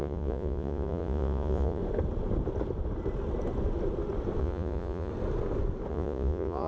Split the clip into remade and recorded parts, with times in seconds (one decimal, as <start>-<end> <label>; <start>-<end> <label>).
0.0-1.8 remade; 1.8-4.4 recorded; 4.4-5.1 remade; 5.1-5.9 recorded; 5.9-6.7 remade